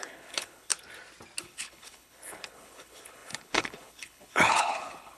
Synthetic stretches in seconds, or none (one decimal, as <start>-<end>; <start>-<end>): 0.0-0.7; 1.4-5.2